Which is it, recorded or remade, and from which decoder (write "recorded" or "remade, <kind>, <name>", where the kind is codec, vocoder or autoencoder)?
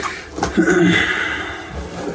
recorded